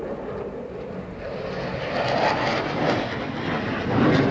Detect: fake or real real